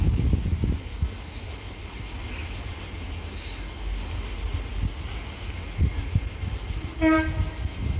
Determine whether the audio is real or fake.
real